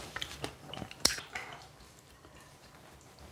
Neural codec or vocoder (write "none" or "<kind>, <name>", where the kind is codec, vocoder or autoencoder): vocoder, BigVGAN v2